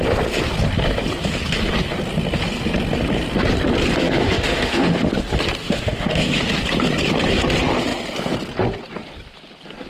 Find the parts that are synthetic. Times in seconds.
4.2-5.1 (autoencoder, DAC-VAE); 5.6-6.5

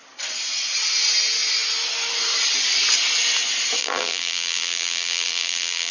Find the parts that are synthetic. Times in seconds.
3.8-5.9 (vocoder, BigVGAN v2)

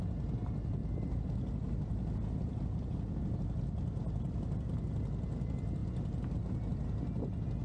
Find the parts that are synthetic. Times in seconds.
0.8-3.4 (vocoder, BigVGAN v2)

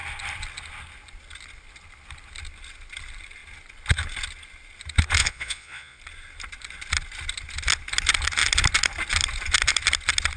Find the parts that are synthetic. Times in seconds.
5.2-6.0 (vocoder, Vocos)

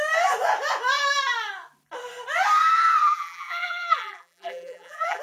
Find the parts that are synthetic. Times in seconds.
3.0-5.2 (vocoder, BigVGAN v2)

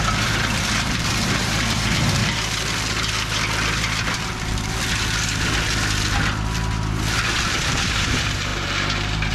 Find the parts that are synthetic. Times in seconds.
0.0-2.2 (vocoder, BigVGAN v2); 7.4-9.3

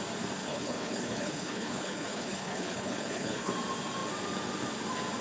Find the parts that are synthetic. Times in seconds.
0.4-3.5 (codec, HILCodec)

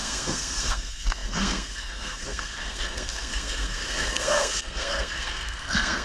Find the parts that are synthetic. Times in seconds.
0.0-6.0 (codec, SNAC)